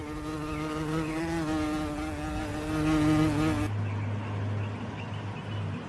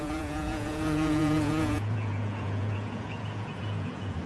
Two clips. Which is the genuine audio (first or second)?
first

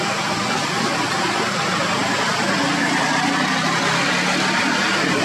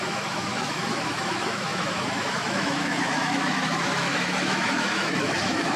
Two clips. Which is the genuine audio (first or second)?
first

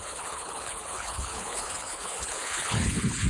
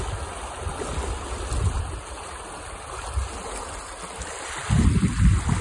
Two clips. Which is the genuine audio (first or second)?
second